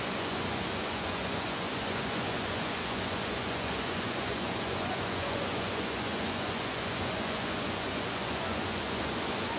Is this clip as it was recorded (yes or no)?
no